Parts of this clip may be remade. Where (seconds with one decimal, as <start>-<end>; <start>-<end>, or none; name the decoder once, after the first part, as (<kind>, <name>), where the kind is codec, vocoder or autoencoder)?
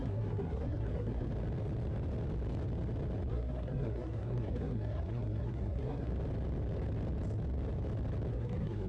0.0-1.3 (codec, SNAC); 3.3-6.1; 8.3-8.9